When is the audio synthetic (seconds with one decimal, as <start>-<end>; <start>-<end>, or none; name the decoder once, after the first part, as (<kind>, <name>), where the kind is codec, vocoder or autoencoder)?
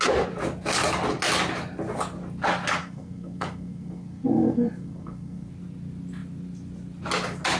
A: 2.8-5.5 (codec, SNAC)